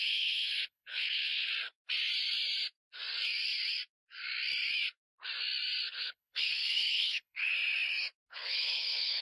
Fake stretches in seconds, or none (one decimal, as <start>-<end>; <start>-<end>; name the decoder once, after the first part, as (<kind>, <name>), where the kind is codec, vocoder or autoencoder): 0.0-1.5 (codec, HILCodec); 6.0-7.5; 8.3-9.2